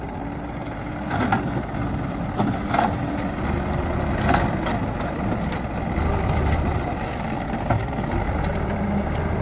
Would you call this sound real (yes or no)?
no